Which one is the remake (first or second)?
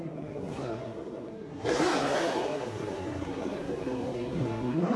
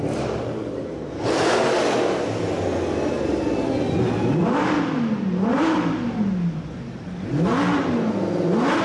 first